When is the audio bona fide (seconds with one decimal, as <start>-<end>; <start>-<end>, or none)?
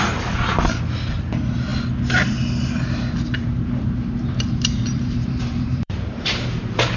0.0-3.3; 6.6-7.0